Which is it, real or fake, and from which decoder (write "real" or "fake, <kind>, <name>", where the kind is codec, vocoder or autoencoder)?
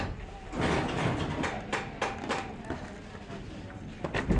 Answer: real